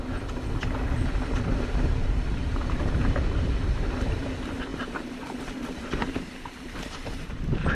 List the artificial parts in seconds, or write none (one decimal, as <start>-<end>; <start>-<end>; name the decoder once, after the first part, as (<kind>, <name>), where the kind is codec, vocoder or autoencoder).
2.4-4.3 (vocoder, BigVGAN v2); 4.7-7.7